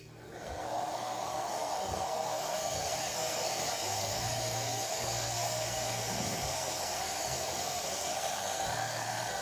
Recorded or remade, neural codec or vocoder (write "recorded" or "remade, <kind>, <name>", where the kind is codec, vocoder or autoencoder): remade, codec, SNAC